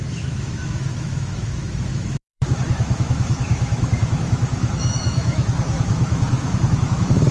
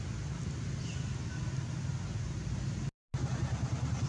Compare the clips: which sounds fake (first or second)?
first